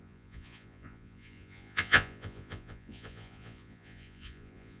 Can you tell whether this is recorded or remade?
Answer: remade